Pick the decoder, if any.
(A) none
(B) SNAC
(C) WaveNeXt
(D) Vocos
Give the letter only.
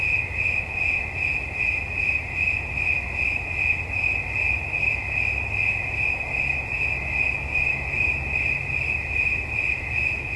A